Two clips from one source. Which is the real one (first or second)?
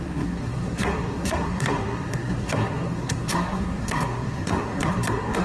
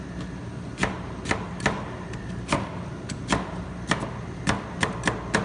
second